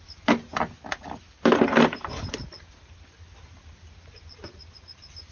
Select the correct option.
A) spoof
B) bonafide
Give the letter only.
B